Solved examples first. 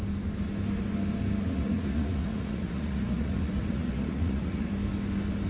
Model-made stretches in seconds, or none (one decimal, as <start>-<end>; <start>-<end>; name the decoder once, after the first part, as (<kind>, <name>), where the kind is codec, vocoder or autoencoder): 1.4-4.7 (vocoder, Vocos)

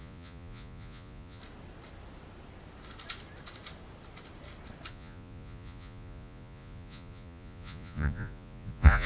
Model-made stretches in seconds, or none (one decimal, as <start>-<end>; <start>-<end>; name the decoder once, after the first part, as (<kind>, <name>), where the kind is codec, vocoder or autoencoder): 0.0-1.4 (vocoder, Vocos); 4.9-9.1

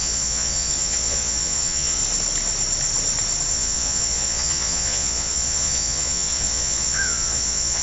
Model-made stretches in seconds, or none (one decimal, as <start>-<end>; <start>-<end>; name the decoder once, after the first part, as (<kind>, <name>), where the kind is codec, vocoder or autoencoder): 0.0-2.0 (vocoder, Vocos); 3.5-7.8

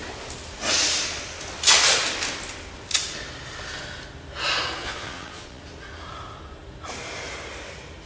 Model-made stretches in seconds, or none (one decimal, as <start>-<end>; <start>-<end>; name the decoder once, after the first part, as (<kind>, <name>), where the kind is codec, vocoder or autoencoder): 4.8-5.6 (vocoder, Vocos)

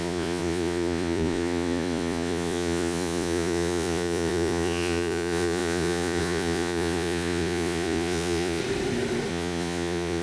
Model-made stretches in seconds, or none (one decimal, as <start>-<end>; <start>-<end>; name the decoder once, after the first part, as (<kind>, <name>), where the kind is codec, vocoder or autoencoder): 0.0-8.6 (vocoder, Vocos); 9.3-10.2

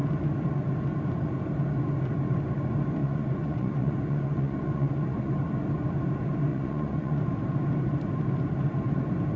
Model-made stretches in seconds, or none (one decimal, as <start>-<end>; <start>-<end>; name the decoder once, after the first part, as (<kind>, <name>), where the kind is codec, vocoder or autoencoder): 3.0-5.3 (vocoder, Vocos); 6.5-7.2

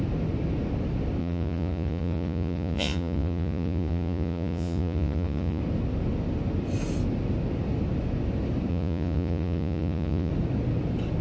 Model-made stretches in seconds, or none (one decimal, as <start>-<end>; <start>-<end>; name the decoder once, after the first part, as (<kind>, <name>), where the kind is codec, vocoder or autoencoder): 1.2-5.6 (vocoder, Vocos); 8.7-10.3

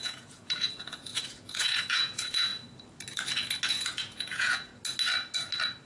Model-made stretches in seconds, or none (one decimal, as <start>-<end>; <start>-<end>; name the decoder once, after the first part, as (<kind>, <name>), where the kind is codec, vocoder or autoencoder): 0.0-2.5 (vocoder, Vocos); 3.7-4.7